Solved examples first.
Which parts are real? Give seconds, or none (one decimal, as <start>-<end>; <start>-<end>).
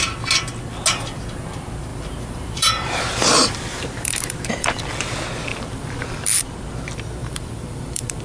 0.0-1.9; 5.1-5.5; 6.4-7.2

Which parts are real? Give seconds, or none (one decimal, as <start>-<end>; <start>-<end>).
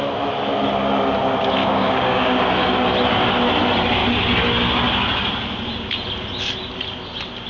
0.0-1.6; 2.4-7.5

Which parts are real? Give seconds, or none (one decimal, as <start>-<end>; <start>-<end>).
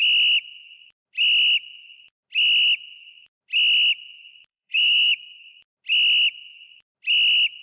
0.0-4.5; 5.6-7.6